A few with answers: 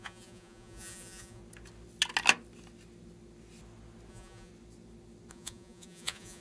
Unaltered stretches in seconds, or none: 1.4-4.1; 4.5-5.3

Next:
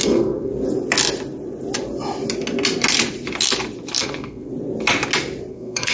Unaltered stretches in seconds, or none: 0.5-4.0; 4.5-5.5

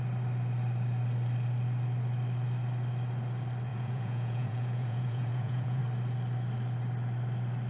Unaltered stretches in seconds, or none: 0.0-3.7; 5.8-7.7

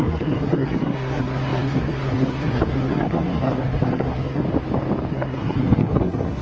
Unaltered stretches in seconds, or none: 4.4-5.1

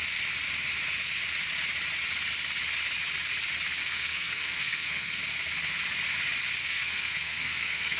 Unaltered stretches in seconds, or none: 0.0-3.8; 5.2-6.6

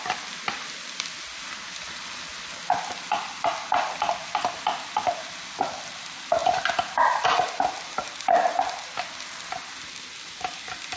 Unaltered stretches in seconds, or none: 0.0-11.0

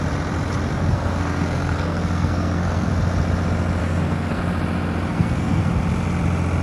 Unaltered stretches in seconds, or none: 0.0-0.7; 2.9-3.8; 4.4-5.1; 5.7-6.6